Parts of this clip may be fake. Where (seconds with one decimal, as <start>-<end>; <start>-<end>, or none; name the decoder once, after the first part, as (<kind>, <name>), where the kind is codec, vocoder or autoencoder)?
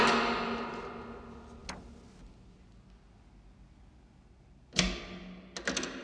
none